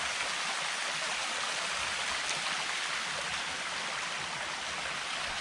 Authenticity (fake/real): real